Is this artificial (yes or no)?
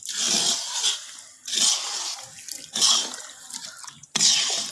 no